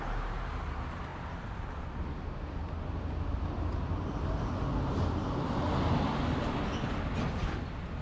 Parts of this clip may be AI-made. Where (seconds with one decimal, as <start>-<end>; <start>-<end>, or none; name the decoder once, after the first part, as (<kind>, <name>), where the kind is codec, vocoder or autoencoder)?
none